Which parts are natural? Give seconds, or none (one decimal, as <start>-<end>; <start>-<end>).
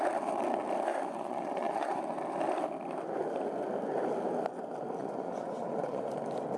0.0-0.9; 2.0-5.0; 6.1-6.6